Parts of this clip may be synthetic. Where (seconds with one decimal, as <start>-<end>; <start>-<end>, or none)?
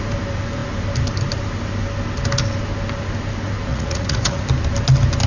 3.7-4.4